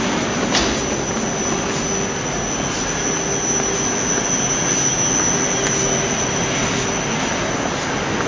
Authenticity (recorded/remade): recorded